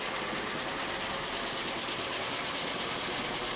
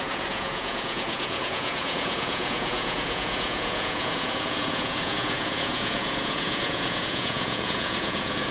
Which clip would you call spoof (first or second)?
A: second